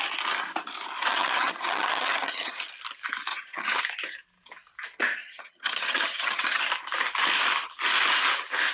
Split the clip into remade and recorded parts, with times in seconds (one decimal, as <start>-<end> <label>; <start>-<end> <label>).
0.0-1.1 recorded; 1.1-2.6 remade; 2.6-3.3 recorded; 3.3-3.8 remade; 3.8-5.2 recorded; 5.2-6.7 remade; 6.7-8.7 recorded